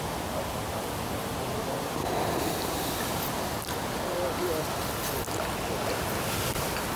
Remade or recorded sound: recorded